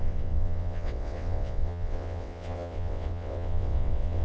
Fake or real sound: fake